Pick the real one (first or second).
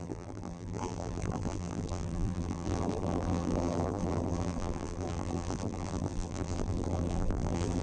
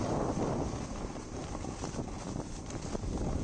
second